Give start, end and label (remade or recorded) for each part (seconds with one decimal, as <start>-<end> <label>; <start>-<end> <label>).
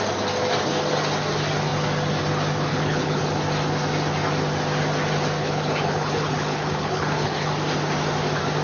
0.0-2.7 recorded; 2.7-3.2 remade; 3.2-5.4 recorded; 5.4-7.5 remade; 7.5-8.6 recorded